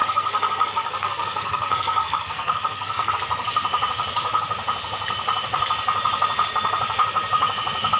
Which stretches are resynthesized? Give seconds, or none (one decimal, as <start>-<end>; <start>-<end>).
0.0-3.1